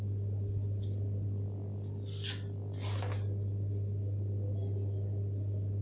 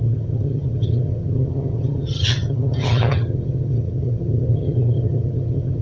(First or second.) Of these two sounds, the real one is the first